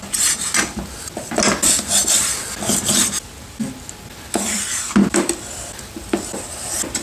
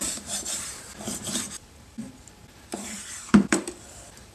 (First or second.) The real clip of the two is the first